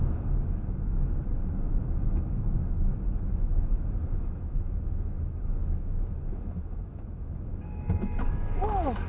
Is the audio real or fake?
fake